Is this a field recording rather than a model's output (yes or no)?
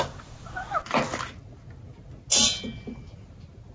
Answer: yes